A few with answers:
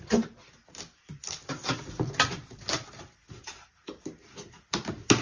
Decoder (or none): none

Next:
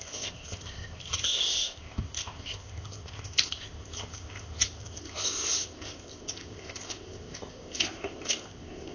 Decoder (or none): codec, ZipCodec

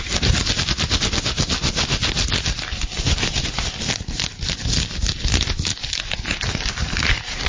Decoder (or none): none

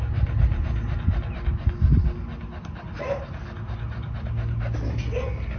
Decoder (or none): none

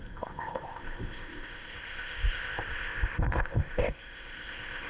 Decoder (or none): codec, ZipCodec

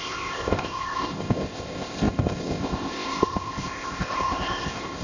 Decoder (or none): codec, ZipCodec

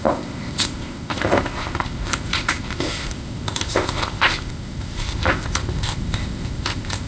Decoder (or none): codec, ZipCodec